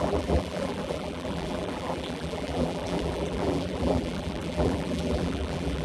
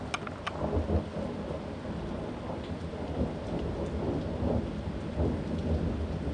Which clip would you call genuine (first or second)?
second